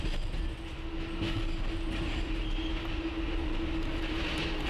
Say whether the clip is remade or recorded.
recorded